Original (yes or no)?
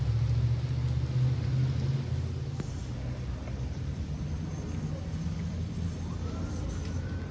yes